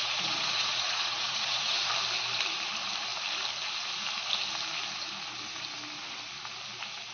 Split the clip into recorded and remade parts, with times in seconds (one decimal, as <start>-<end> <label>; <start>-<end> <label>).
0.0-1.9 remade; 1.9-7.1 recorded